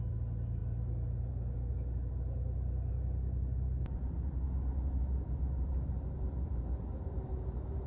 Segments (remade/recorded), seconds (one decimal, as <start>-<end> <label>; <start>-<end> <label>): 0.0-7.9 recorded